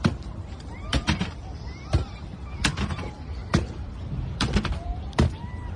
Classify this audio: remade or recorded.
remade